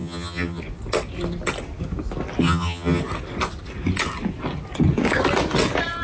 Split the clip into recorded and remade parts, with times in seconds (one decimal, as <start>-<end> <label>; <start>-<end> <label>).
0.0-0.6 remade; 0.6-2.4 recorded; 2.4-3.0 remade; 3.0-6.0 recorded